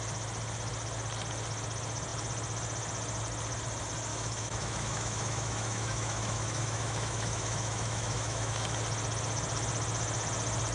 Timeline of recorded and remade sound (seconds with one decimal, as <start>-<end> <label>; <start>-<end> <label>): 0.0-4.1 recorded; 4.1-8.8 remade; 8.8-10.7 recorded

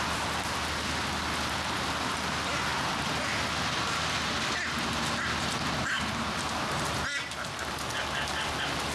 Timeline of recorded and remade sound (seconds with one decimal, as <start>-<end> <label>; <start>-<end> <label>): 0.0-8.9 recorded

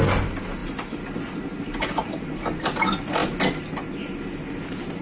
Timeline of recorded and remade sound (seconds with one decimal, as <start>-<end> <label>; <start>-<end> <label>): 0.0-0.6 recorded; 0.6-1.2 remade; 1.2-2.0 recorded; 2.0-2.8 remade; 2.8-5.0 recorded